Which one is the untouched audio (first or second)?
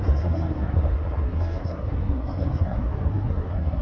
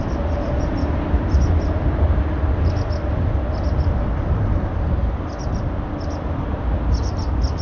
second